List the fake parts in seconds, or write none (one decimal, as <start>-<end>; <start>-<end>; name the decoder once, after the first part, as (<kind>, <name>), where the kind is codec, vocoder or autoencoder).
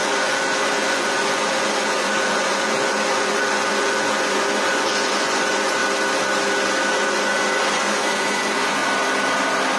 0.0-5.8 (vocoder, Vocos); 6.9-8.8